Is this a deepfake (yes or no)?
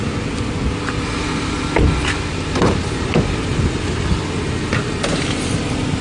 no